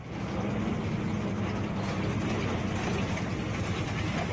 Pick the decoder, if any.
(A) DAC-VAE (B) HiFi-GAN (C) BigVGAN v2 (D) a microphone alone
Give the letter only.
D